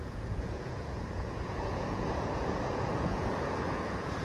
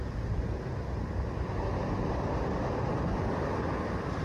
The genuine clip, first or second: second